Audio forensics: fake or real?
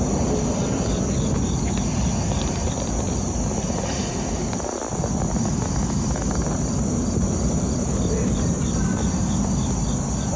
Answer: real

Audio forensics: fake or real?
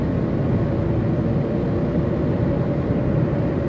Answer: real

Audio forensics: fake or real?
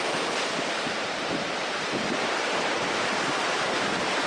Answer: fake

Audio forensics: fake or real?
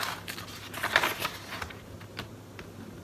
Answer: real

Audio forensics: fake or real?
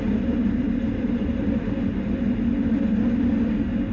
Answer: real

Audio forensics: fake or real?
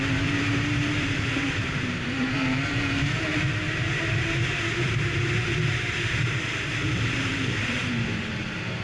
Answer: fake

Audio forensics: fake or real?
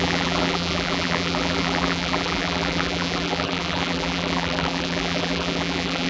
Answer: fake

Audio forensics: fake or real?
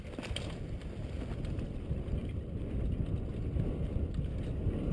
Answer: real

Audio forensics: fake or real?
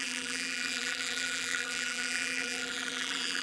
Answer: fake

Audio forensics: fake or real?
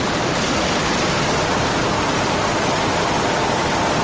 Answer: fake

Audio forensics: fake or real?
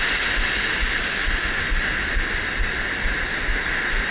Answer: real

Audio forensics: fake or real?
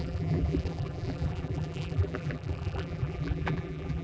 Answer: fake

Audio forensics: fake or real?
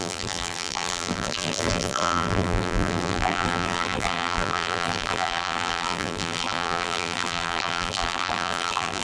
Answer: fake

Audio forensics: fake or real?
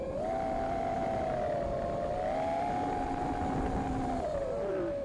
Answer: real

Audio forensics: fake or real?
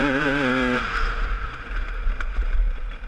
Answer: fake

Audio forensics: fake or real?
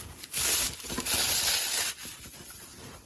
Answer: real